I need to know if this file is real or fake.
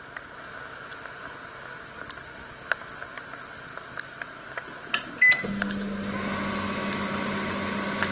real